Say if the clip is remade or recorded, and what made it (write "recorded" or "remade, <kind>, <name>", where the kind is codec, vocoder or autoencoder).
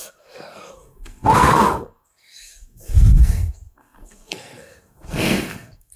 remade, codec, SNAC